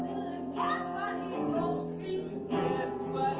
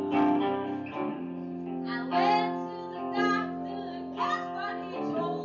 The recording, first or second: second